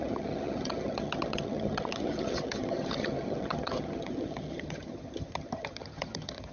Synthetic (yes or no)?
yes